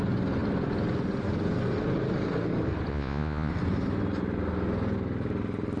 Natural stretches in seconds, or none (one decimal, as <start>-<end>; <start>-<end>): 0.0-2.9; 3.5-5.8